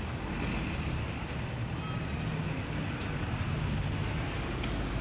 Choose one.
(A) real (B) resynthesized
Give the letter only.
A